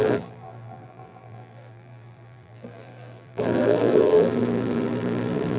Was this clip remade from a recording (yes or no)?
yes